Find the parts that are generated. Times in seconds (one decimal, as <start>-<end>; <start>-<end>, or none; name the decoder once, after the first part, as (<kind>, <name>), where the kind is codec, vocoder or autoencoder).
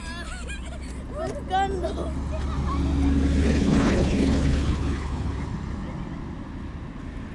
3.4-5.4 (codec, HILCodec)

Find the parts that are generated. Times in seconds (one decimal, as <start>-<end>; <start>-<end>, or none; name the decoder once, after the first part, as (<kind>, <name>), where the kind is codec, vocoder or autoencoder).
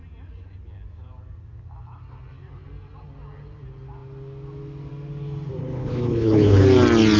5.6-6.6 (codec, HILCodec)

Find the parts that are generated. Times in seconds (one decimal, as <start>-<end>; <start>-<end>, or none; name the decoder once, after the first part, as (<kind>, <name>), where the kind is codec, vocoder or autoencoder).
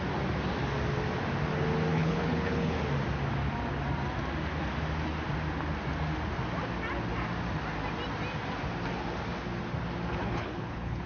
1.9-2.7 (codec, HILCodec); 10.2-11.1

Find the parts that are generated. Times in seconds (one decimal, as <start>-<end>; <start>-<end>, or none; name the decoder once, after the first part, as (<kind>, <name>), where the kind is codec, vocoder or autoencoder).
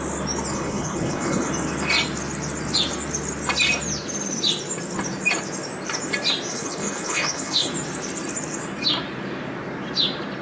0.5-1.5 (codec, HILCodec); 6.5-7.7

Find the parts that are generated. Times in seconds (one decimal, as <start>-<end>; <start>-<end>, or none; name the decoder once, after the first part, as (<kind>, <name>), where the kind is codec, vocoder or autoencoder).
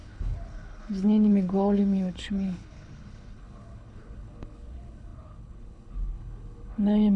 0.0-7.2 (codec, HILCodec)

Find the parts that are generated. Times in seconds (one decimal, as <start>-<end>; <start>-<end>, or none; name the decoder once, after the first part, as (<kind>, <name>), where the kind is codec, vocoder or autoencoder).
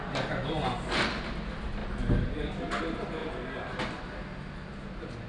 none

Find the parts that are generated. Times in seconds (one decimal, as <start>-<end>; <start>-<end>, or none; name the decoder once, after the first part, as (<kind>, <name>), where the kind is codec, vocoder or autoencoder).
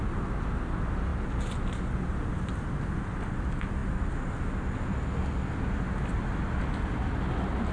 none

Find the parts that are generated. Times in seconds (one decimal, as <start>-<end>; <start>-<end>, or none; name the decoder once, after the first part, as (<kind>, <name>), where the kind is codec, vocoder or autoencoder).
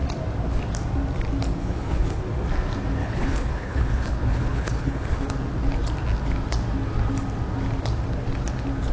1.6-2.2 (codec, HILCodec); 3.0-5.3